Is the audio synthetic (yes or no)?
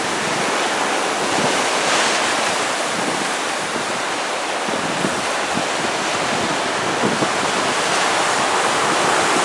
no